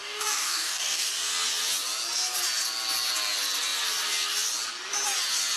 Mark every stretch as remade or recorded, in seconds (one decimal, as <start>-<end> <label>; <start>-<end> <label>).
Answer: 0.0-1.1 remade; 1.1-5.6 recorded